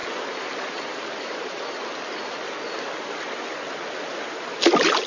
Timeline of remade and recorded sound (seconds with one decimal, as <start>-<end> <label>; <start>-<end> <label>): 0.0-1.0 recorded; 1.0-1.9 remade; 1.9-5.1 recorded